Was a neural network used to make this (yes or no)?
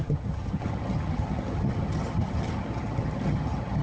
yes